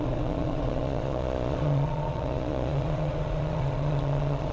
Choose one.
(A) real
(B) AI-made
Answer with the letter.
B